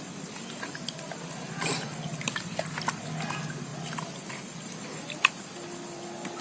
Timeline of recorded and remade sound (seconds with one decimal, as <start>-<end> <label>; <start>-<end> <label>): 0.0-6.4 recorded